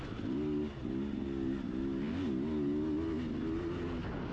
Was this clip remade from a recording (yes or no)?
no